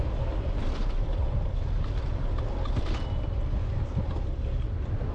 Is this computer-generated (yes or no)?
no